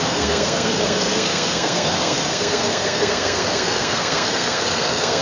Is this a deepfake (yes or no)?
yes